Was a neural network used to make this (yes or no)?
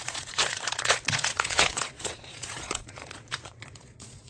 yes